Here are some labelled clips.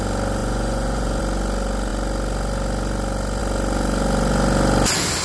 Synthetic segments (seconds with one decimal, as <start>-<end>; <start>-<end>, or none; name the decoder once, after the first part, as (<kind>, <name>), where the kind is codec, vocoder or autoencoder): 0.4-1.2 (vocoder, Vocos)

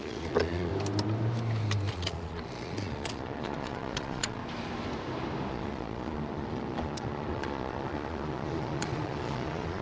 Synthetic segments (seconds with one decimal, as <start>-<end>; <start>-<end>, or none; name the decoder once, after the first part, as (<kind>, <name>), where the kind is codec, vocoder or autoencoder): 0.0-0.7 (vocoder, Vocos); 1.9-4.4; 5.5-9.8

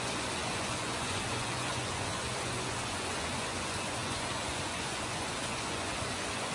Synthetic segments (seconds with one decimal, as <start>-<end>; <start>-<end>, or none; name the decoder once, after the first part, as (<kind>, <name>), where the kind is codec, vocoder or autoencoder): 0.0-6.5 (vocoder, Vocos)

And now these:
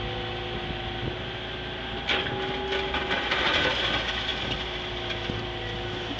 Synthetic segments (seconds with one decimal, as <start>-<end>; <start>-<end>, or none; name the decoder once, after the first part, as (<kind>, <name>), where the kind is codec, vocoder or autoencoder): none

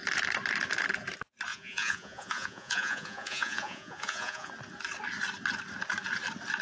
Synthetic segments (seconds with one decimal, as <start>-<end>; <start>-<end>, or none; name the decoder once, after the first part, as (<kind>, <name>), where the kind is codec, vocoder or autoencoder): 1.5-4.5 (vocoder, Vocos)

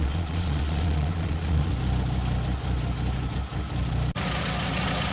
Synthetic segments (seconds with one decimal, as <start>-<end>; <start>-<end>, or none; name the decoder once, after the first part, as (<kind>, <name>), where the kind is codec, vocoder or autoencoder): 0.0-1.7 (vocoder, Vocos)

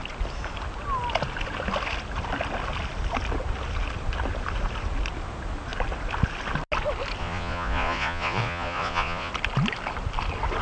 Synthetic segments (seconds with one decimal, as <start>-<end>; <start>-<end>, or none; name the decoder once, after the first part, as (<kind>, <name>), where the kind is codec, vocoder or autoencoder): 7.2-9.3 (vocoder, Vocos)

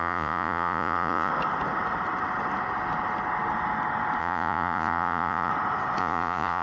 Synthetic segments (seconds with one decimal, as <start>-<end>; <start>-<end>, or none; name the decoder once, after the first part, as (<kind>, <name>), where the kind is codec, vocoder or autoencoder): 0.0-1.3 (vocoder, Vocos); 4.2-5.5; 6.0-6.6